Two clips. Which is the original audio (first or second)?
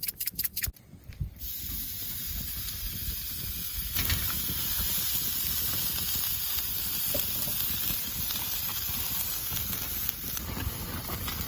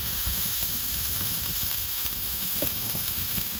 first